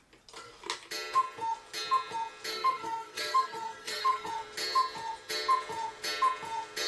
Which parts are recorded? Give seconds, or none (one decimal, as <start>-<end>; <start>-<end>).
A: 0.0-2.5; 4.3-6.9